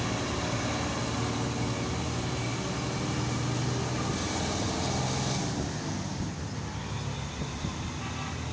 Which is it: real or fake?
real